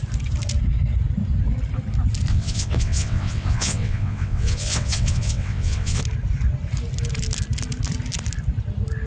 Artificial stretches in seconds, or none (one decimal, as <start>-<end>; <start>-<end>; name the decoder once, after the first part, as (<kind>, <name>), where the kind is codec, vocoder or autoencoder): 2.3-6.0 (vocoder, WaveNeXt)